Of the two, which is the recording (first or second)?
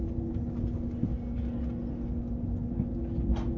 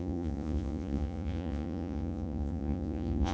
first